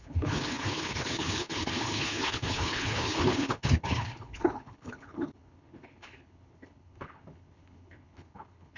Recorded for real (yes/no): no